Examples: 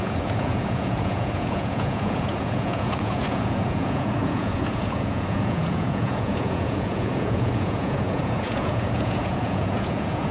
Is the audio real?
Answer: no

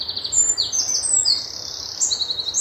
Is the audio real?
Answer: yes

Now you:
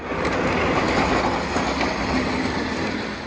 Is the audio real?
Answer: yes